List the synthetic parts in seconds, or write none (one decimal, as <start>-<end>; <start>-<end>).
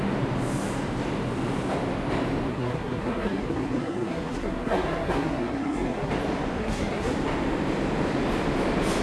2.5-6.1; 6.6-7.1